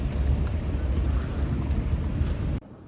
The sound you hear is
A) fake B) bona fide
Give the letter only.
B